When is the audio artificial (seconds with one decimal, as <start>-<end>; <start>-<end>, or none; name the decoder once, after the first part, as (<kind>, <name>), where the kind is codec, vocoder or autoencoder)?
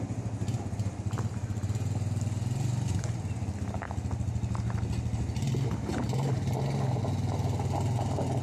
none